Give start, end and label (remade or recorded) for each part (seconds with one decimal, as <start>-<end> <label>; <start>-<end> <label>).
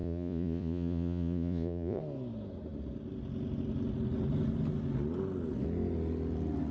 0.0-2.0 remade; 2.0-6.7 recorded